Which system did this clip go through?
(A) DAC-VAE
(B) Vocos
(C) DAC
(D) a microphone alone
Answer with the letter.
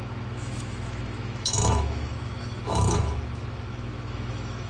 A